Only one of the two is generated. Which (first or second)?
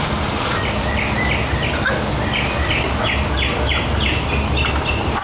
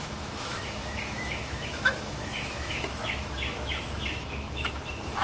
second